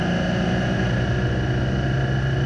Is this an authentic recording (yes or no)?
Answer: yes